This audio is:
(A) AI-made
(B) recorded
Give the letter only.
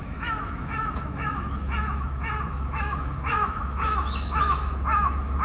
A